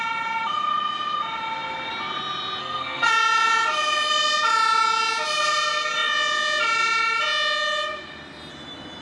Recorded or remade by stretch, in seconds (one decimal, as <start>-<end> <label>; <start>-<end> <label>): 0.0-2.6 recorded; 2.6-3.1 remade; 3.1-9.0 recorded